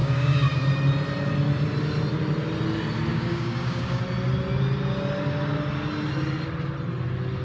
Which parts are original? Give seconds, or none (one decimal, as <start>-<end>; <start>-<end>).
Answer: 0.6-3.1; 4.0-7.4